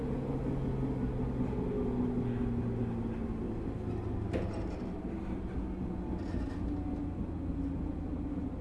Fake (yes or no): no